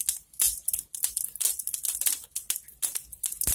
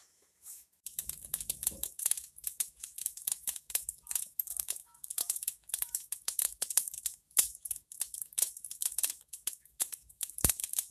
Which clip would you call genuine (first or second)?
first